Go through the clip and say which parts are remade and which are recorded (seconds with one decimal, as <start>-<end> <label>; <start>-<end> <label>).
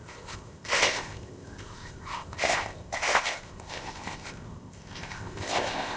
0.0-6.0 remade